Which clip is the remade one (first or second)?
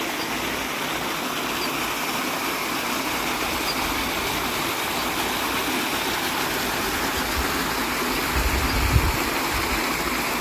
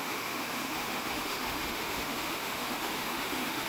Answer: second